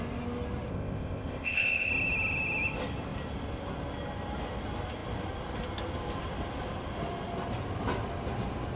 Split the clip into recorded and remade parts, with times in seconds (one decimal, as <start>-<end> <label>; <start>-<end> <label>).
0.0-0.7 recorded; 0.7-1.9 remade; 1.9-8.8 recorded